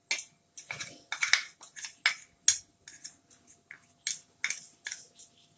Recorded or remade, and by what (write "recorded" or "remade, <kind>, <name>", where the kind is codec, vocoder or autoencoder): recorded